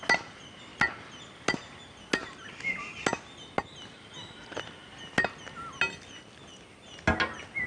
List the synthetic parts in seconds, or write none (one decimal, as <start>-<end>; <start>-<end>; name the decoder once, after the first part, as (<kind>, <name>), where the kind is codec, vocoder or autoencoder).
none